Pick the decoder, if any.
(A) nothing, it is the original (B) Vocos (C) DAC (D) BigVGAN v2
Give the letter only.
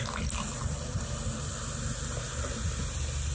A